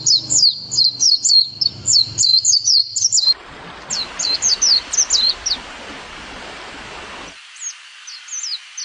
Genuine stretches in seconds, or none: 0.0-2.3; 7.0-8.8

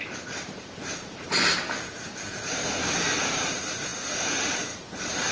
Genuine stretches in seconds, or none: 3.9-4.8

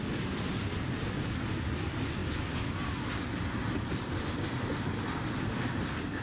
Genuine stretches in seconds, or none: 0.0-6.2